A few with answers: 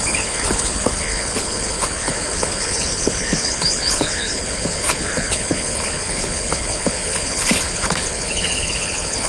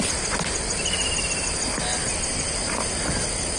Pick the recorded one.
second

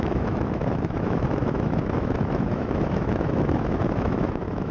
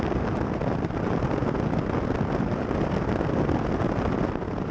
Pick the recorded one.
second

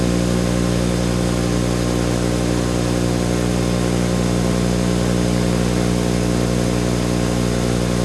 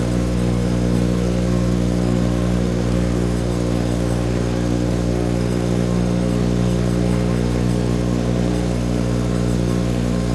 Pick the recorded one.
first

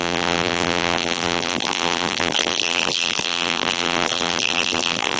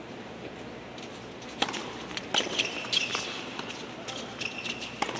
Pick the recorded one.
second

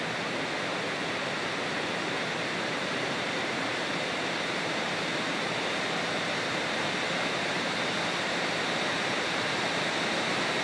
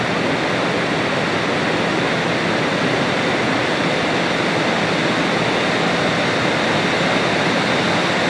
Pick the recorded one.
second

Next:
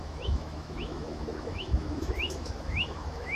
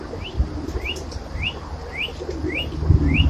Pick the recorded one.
second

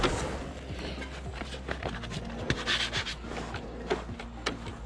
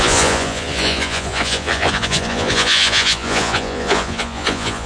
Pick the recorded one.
first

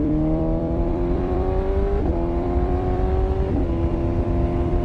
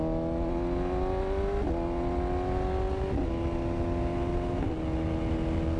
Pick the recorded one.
second